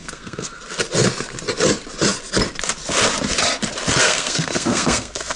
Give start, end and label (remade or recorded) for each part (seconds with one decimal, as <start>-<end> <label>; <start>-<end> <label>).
0.0-0.6 remade; 0.6-4.0 recorded; 4.0-5.4 remade